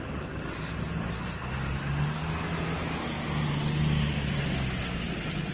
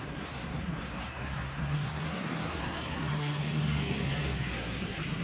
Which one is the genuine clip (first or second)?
first